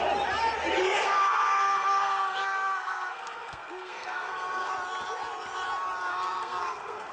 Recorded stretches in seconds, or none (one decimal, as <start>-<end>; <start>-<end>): 0.0-0.8; 4.7-6.1